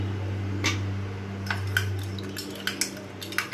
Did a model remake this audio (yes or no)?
no